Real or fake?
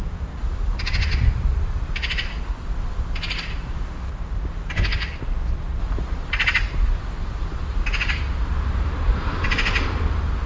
fake